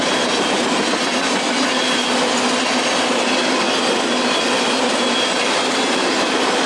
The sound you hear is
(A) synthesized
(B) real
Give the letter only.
B